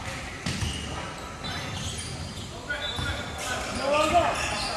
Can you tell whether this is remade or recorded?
recorded